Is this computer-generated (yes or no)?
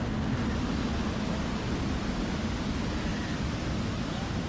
no